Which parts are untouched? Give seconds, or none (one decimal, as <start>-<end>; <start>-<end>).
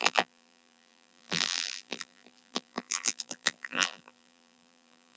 none